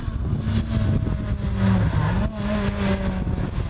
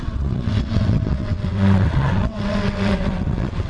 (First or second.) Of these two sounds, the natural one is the first